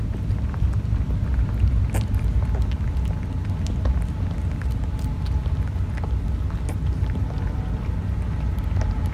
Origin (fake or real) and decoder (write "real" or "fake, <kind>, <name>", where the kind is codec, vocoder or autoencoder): real